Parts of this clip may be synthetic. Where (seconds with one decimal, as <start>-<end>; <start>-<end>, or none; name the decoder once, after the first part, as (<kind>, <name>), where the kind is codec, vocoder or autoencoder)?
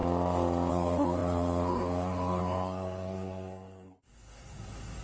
0.7-5.0 (codec, SNAC)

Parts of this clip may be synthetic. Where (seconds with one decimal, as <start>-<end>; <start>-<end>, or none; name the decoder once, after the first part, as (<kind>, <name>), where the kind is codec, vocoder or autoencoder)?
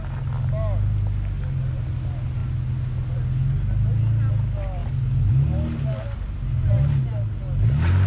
none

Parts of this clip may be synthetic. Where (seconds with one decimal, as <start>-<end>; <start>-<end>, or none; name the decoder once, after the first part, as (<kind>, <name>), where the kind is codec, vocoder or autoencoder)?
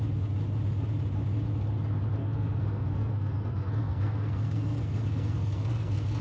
2.2-6.2 (codec, SNAC)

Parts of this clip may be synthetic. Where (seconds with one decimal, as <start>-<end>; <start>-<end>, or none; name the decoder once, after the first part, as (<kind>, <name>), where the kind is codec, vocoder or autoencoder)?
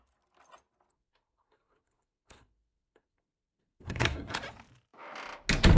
0.9-4.4 (codec, SNAC)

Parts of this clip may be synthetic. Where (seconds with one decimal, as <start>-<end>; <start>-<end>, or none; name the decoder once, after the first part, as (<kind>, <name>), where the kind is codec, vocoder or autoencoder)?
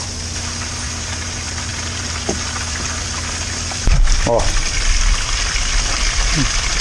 none